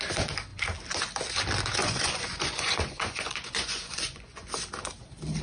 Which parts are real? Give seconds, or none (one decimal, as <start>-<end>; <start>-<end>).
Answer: 0.0-1.8; 4.5-5.4